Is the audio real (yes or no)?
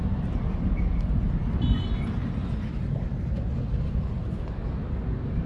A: yes